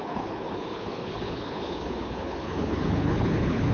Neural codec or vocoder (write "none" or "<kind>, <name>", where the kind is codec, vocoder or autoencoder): codec, HILCodec